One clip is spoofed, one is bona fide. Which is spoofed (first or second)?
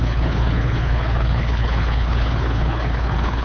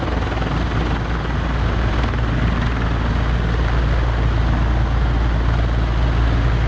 first